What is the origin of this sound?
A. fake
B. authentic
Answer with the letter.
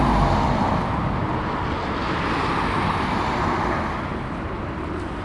B